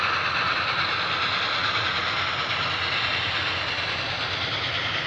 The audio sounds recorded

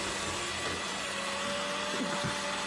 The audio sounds recorded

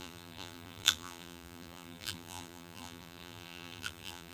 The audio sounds remade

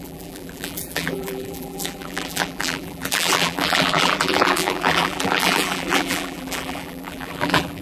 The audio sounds remade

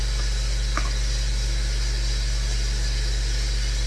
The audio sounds recorded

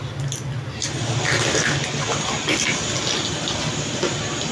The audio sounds recorded